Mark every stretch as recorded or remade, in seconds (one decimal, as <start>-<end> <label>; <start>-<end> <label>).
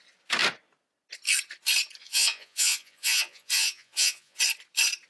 0.0-2.0 recorded; 2.0-4.4 remade; 4.4-5.1 recorded